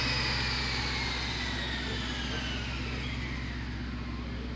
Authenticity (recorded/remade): recorded